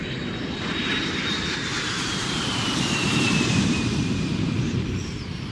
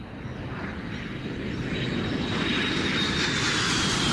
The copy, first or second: first